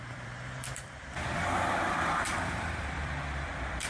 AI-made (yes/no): yes